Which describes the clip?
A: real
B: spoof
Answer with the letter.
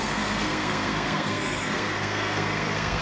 B